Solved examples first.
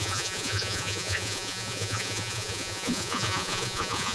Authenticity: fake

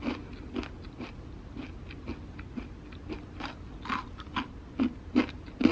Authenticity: real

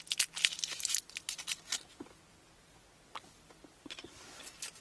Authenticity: real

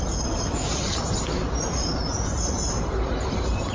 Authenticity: real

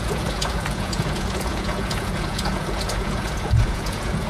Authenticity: fake